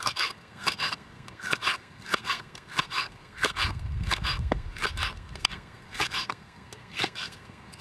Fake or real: fake